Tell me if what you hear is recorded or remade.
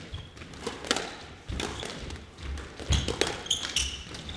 recorded